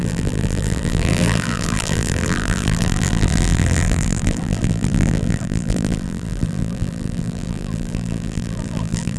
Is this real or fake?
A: fake